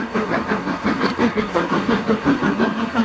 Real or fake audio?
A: fake